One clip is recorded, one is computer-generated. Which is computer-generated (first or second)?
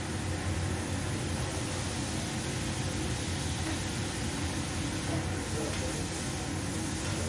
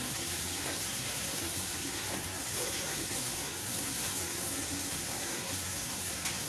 second